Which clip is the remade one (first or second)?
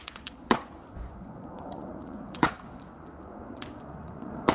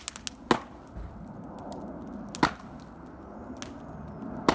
first